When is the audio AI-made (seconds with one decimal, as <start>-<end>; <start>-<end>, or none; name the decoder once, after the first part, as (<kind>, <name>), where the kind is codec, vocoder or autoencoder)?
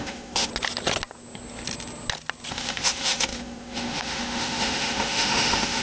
0.0-0.5 (autoencoder, DAC-VAE); 2.5-5.8